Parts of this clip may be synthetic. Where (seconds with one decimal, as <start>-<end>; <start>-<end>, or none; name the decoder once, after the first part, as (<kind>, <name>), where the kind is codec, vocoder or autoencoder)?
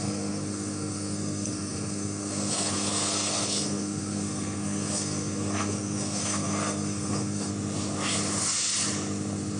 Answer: 0.0-7.5 (codec, SNAC)